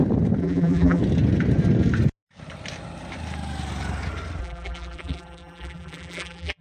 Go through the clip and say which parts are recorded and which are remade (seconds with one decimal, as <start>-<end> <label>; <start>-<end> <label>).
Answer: 0.0-0.4 recorded; 0.4-1.0 remade; 1.0-4.4 recorded; 4.4-6.6 remade